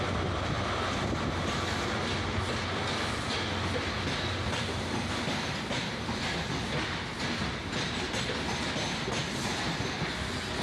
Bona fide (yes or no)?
yes